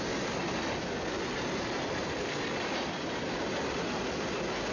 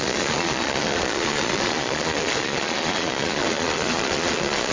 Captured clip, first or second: first